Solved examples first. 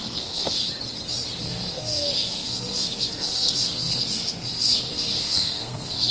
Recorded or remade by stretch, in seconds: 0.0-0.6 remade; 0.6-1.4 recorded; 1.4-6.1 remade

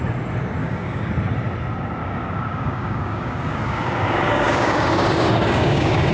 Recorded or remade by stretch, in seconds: 0.0-0.6 recorded; 0.6-1.1 remade; 1.1-2.0 recorded; 2.0-6.1 remade